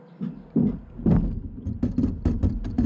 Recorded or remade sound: recorded